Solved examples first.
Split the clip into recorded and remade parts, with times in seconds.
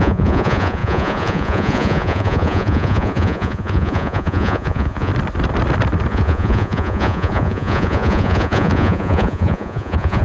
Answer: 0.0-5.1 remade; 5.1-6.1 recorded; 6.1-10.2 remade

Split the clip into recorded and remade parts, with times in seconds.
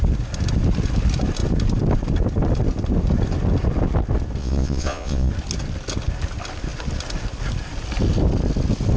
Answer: 0.0-4.4 recorded; 4.4-5.3 remade; 5.3-9.0 recorded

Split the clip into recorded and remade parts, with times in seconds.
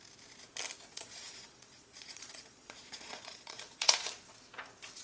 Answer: 0.0-0.9 recorded; 0.9-3.9 remade; 3.9-5.0 recorded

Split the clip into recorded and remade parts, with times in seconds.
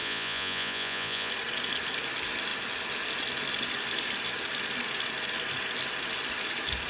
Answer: 0.0-1.3 remade; 1.3-6.9 recorded